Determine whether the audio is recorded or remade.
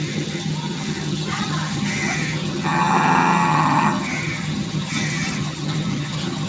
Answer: remade